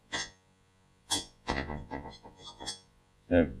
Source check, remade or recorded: remade